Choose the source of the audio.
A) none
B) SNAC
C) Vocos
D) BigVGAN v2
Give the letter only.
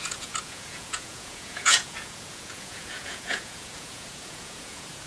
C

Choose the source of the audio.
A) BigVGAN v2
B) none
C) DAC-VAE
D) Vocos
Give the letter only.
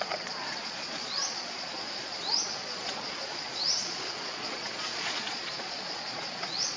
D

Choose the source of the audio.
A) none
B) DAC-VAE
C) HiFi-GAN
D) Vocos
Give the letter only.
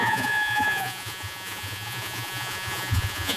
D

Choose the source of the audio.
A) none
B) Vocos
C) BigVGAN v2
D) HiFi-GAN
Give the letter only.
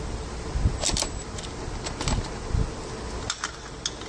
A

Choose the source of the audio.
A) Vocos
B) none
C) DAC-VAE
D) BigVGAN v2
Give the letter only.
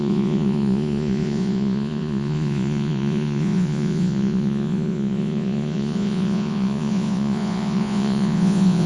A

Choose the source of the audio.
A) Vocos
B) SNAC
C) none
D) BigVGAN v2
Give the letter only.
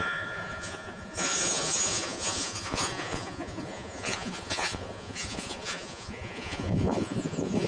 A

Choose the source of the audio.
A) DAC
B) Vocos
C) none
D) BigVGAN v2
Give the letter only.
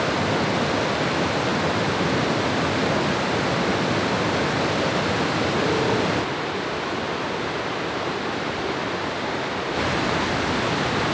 C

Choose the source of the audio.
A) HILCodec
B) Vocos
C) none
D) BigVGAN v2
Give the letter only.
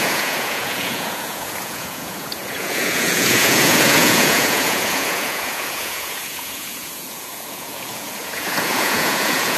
B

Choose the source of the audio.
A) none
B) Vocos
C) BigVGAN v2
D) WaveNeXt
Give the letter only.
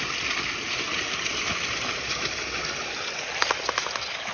A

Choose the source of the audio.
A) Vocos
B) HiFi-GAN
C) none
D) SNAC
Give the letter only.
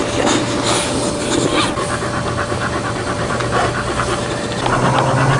C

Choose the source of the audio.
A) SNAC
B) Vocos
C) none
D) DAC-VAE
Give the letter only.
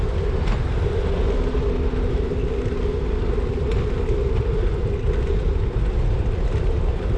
C